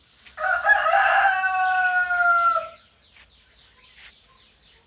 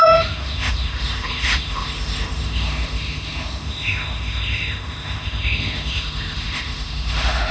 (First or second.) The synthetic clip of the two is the second